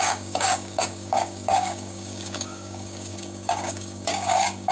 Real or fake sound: fake